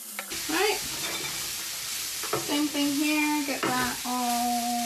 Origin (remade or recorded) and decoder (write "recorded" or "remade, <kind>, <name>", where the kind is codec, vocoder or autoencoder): recorded